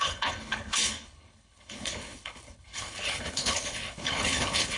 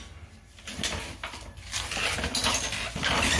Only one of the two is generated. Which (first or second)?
first